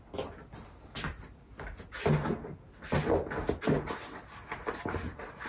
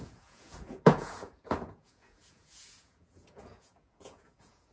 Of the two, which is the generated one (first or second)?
second